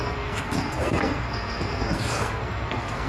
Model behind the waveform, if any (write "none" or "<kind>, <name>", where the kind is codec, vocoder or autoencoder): codec, SNAC